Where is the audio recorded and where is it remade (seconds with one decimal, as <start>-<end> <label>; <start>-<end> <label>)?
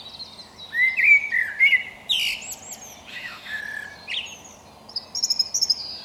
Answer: 0.0-3.1 recorded; 3.1-3.6 remade; 3.6-6.0 recorded